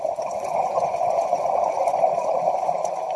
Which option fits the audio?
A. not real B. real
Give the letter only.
A